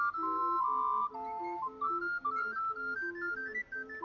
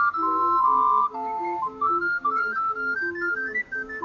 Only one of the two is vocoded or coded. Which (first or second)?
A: second